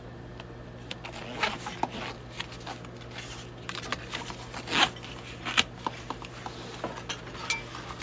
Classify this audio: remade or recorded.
recorded